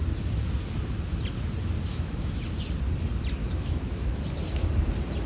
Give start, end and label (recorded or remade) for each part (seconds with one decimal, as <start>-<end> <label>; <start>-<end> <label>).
0.0-1.9 recorded; 1.9-2.4 remade; 2.4-3.4 recorded; 3.4-4.2 remade; 4.2-5.3 recorded